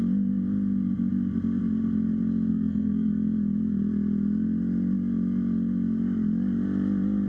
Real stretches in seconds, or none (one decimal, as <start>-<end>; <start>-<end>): 0.0-2.5; 3.1-7.3